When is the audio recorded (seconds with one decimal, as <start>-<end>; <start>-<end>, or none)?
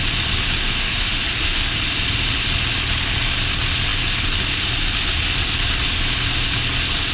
0.0-0.6; 1.2-7.1